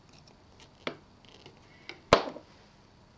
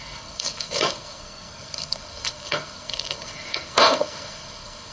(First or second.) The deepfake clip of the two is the second